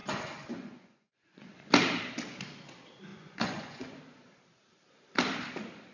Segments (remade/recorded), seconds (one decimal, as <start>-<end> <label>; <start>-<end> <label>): 0.0-1.7 remade; 1.7-3.1 recorded; 3.1-4.0 remade; 4.0-5.9 recorded